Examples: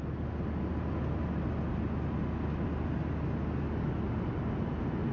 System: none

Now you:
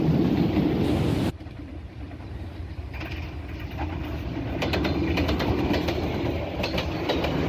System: none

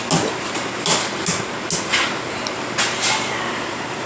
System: none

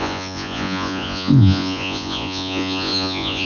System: vocoder, Vocos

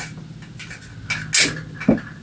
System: none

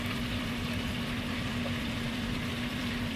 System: vocoder, BigVGAN v2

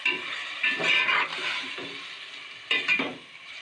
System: vocoder, BigVGAN v2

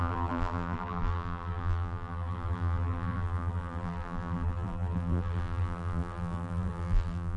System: vocoder, BigVGAN v2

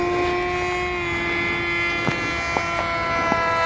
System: none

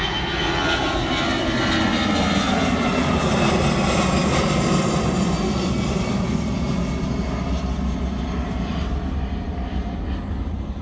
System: none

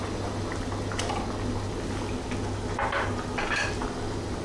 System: none